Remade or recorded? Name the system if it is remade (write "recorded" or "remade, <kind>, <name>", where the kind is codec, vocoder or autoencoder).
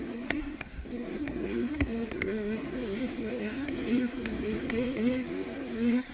remade, codec, SNAC